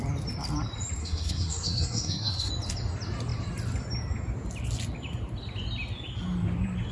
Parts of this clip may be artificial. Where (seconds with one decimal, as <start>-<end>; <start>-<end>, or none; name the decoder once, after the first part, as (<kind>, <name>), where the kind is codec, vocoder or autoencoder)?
1.0-2.5 (codec, SNAC)